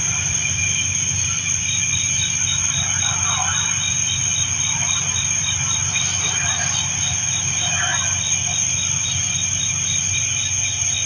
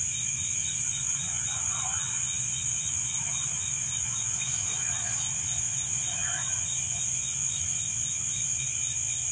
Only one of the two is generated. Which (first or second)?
second